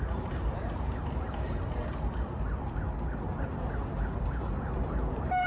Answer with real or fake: real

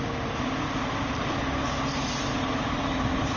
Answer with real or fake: real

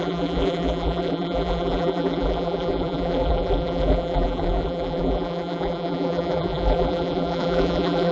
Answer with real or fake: fake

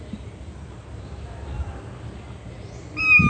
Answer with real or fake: real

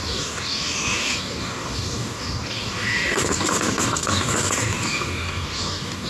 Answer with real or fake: fake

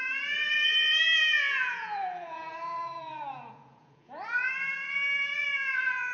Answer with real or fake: fake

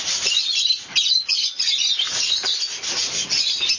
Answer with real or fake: real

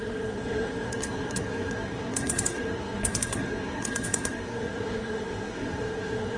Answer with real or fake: fake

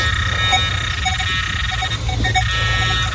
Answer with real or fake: real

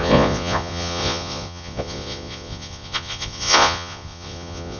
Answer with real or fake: fake